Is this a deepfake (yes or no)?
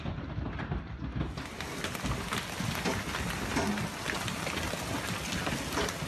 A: no